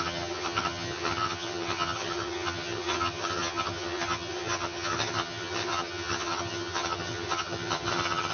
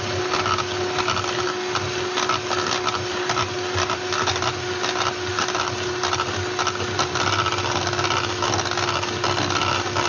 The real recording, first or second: second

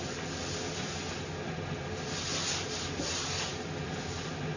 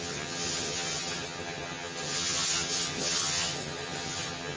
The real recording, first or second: first